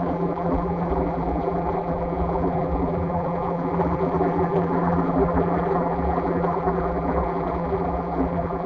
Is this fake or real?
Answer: fake